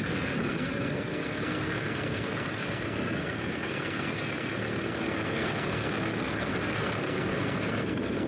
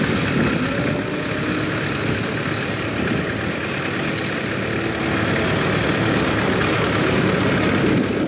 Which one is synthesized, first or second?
first